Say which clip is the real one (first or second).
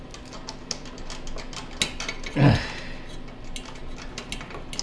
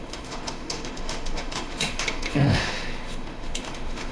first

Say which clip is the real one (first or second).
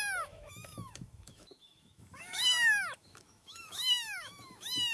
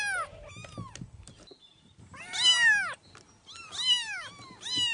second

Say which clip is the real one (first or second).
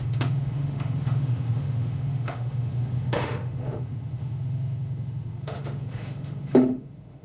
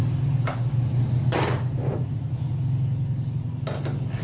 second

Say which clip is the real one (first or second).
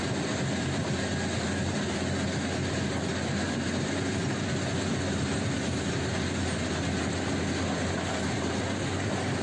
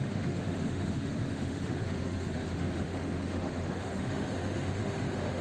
first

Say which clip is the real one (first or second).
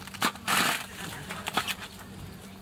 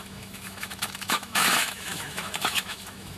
first